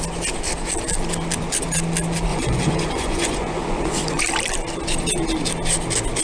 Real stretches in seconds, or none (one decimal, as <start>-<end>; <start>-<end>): 0.0-2.3; 4.2-6.2